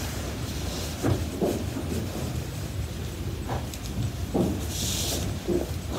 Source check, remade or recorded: recorded